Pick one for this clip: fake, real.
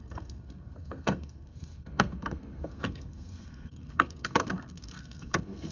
fake